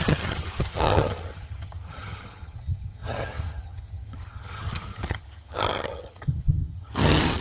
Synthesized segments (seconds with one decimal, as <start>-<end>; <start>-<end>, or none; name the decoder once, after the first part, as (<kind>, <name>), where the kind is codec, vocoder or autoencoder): 0.0-7.4 (vocoder, HiFi-GAN)